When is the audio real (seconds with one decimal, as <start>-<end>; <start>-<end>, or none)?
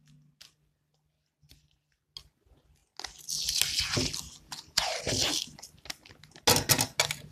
0.0-7.3